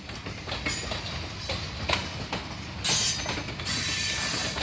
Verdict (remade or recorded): recorded